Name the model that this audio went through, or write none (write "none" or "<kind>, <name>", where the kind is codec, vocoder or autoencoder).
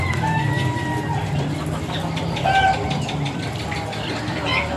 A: none